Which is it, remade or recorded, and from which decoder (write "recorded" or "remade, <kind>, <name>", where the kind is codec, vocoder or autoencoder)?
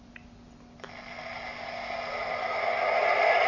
recorded